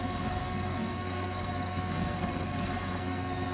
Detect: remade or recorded remade